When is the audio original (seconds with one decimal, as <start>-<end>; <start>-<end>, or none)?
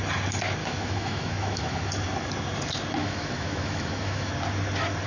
0.0-0.6; 1.9-3.0; 4.3-5.1